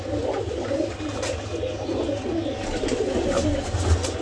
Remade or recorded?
recorded